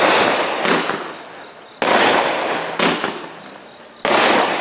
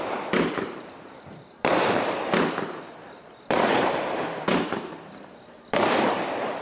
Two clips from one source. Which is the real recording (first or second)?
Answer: first